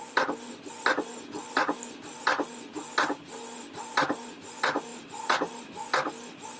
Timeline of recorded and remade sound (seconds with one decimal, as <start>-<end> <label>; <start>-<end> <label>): 0.0-6.6 recorded